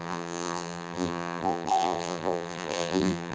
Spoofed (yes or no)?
yes